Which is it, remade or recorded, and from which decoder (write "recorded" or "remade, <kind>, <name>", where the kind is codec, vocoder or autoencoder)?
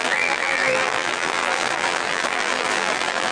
remade, vocoder, BigVGAN v2